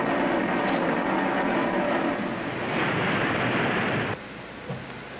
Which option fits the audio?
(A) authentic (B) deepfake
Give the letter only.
A